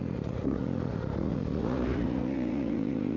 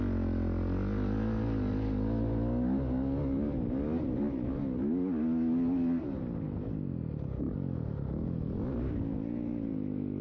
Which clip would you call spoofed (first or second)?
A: first